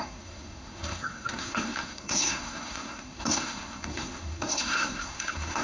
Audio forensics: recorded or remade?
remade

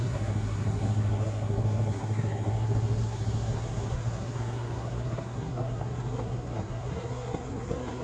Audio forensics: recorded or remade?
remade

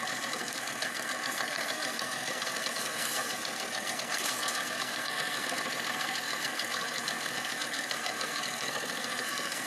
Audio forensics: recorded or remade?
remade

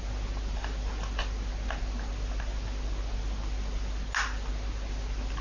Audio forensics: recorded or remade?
recorded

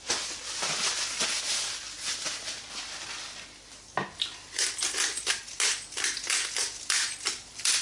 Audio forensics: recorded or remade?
recorded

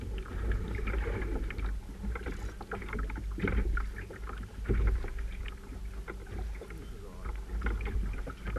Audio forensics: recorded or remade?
recorded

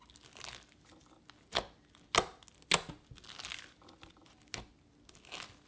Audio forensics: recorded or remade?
recorded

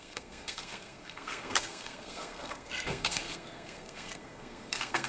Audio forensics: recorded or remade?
remade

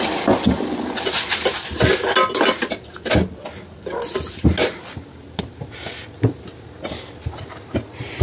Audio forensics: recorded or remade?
recorded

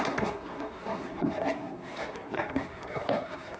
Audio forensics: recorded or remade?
remade